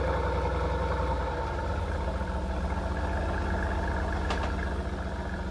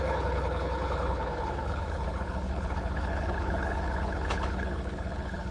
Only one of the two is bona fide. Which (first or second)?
first